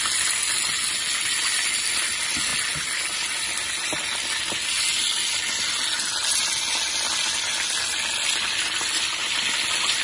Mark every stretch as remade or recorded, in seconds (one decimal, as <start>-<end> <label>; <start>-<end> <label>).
0.0-10.0 recorded

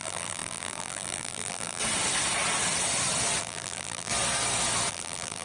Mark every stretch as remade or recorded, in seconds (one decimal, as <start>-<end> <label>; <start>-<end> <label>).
0.0-1.8 remade; 1.8-3.4 recorded; 3.4-4.1 remade; 4.1-4.9 recorded; 4.9-5.4 remade

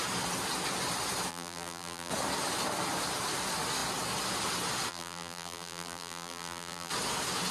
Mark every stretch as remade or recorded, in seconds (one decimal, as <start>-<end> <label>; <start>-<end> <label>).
0.0-1.3 recorded; 1.3-2.1 remade; 2.1-4.9 recorded; 4.9-6.9 remade; 6.9-7.5 recorded

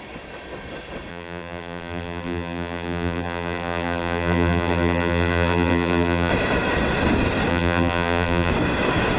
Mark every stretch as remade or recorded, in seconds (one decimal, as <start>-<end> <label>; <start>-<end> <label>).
0.0-1.1 recorded; 1.1-6.3 remade; 6.3-7.5 recorded; 7.5-8.5 remade; 8.5-9.2 recorded

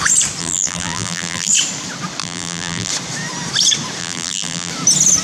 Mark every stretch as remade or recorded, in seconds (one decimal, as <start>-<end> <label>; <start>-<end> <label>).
0.0-0.4 recorded; 0.4-1.5 remade; 1.5-2.2 recorded; 2.2-2.9 remade; 2.9-4.0 recorded; 4.0-4.7 remade; 4.7-5.2 recorded